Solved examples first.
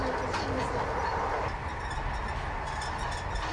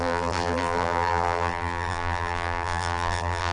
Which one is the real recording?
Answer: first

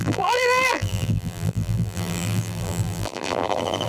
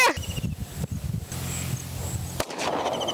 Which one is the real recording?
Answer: second